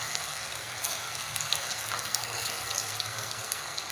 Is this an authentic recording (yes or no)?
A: no